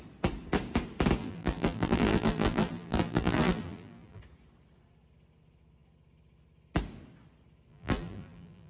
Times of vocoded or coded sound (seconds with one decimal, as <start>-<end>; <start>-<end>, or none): 1.2-4.2; 7.7-8.7